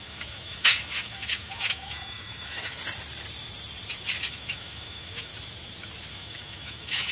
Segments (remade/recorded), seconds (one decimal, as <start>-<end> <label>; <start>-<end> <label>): 0.0-2.8 remade; 2.8-4.3 recorded; 4.3-5.3 remade; 5.3-6.1 recorded; 6.1-7.1 remade